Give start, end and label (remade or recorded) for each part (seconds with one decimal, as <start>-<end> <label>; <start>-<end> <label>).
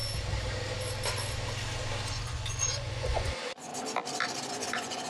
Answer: 0.0-2.1 recorded; 2.1-3.7 remade; 3.7-4.5 recorded; 4.5-5.1 remade